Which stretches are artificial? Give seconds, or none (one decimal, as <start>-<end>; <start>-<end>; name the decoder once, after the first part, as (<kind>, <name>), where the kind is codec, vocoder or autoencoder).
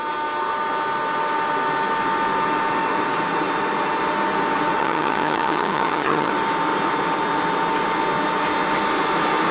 4.8-6.3 (vocoder, HiFi-GAN)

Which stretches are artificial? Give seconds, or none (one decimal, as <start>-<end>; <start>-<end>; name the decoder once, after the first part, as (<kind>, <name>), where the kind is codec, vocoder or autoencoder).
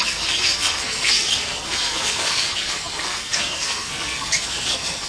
0.0-5.1 (codec, SNAC)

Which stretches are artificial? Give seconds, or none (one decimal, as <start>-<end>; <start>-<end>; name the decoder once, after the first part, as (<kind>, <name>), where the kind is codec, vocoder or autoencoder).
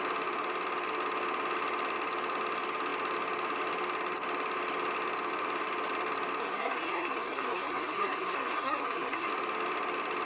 6.4-9.3 (codec, SNAC)